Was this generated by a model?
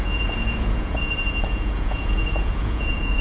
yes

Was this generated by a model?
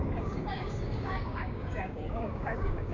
yes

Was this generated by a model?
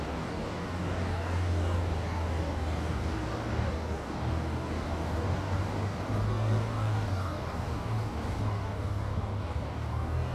yes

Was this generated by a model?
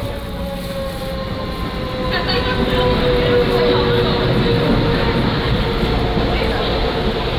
no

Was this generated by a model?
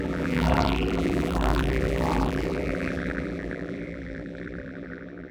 yes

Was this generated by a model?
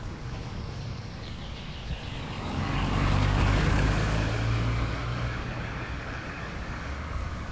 yes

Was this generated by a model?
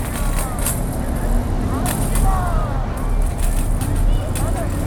no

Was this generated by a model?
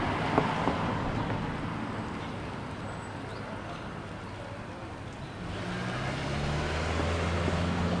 no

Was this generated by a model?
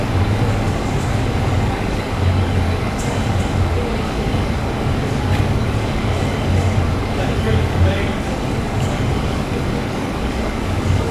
yes